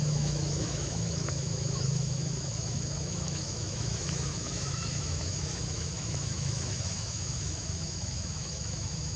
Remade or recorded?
remade